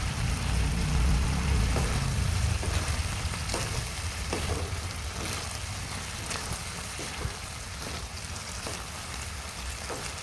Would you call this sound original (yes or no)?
yes